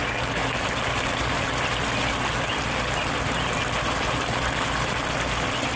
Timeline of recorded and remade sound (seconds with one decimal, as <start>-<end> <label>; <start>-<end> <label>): 0.0-5.8 recorded